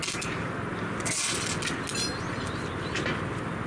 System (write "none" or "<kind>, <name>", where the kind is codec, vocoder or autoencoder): none